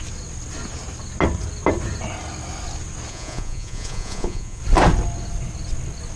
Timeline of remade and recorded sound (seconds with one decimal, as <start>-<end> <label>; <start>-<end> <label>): 0.0-3.1 recorded; 3.1-4.6 remade; 4.6-6.2 recorded